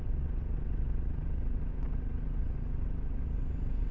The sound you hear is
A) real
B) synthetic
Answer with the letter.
B